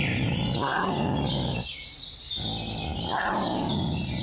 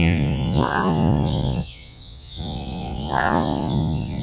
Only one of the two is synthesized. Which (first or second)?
second